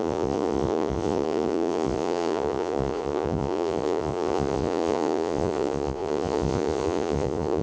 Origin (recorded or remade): remade